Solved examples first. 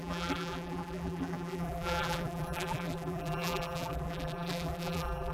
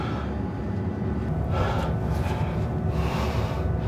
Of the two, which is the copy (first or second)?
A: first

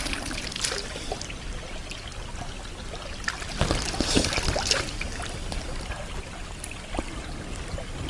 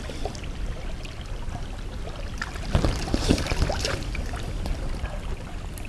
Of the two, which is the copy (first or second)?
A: second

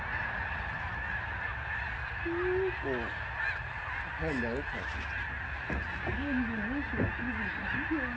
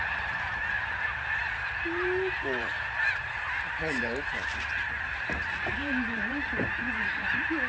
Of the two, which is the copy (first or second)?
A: second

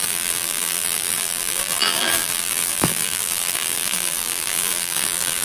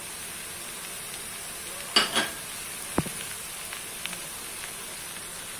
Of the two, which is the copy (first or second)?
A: first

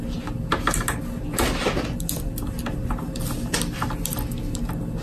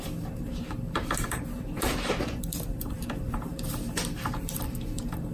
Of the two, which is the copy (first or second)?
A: second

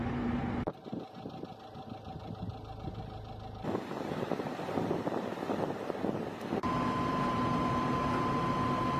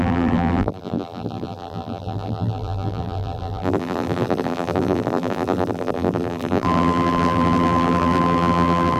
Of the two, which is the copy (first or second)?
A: second